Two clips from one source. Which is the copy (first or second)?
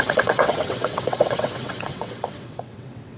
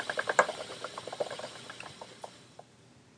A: first